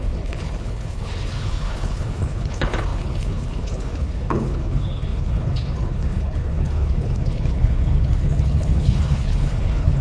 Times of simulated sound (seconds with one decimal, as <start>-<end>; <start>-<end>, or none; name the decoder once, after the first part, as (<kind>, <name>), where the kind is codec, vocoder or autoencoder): 0.0-10.0 (codec, HILCodec)